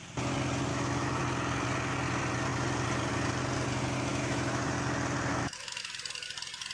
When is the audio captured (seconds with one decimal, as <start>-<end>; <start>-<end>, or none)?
0.0-0.7; 1.2-4.1; 4.6-5.3; 5.9-6.7